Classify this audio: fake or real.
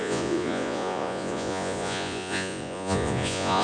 fake